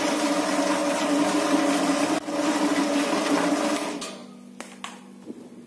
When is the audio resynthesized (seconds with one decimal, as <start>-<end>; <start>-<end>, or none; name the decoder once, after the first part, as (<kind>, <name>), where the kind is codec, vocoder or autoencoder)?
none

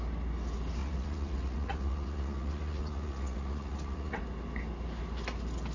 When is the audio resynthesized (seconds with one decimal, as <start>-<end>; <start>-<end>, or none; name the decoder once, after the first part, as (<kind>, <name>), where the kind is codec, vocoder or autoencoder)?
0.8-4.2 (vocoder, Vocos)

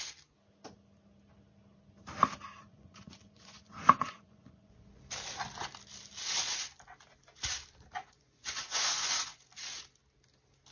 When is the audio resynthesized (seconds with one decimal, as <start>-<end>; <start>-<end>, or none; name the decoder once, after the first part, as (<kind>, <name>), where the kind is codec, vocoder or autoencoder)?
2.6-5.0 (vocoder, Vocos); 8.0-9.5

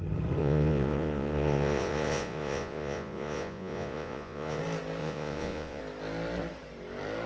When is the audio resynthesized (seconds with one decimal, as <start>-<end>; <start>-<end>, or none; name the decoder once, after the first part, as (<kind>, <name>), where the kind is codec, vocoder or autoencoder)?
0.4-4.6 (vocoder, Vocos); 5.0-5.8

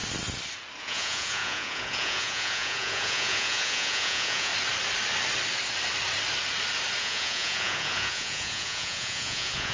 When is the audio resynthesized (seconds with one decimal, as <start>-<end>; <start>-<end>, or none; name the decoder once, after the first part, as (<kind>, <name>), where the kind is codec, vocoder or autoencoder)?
0.8-4.5 (vocoder, Vocos); 7.0-9.7